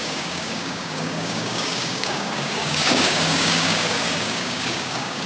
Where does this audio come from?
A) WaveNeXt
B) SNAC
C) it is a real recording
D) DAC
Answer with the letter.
D